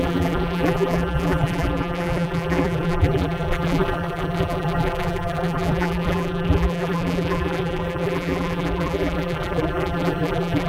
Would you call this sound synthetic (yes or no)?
yes